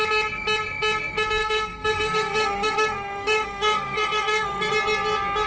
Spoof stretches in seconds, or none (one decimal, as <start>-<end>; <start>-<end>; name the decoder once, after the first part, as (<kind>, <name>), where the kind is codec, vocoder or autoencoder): 1.4-4.7 (codec, SNAC)